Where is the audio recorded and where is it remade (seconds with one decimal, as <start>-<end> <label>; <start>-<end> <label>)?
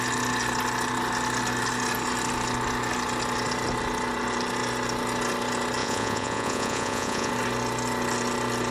0.0-5.8 recorded; 5.8-7.3 remade; 7.3-8.7 recorded